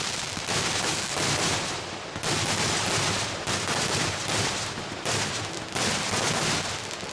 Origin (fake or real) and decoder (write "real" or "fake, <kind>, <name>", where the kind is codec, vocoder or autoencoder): real